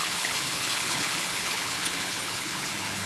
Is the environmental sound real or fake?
fake